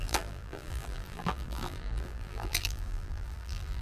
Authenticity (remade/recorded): remade